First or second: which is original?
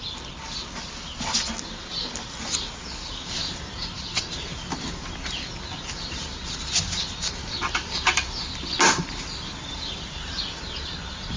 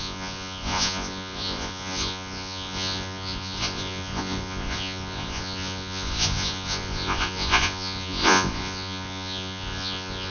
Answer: first